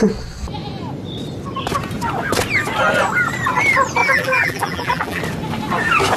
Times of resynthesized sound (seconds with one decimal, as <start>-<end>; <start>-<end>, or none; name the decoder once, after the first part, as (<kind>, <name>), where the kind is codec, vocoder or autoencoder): 4.0-5.2 (vocoder, BigVGAN v2)